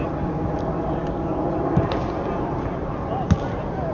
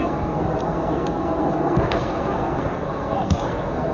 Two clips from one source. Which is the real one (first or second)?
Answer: first